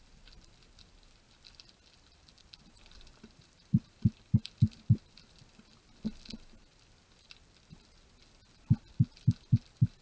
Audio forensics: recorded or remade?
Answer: recorded